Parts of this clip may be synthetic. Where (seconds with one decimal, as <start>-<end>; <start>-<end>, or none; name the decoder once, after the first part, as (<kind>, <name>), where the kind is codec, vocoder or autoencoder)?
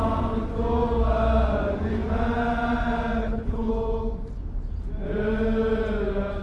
3.2-3.7 (codec, HILCodec)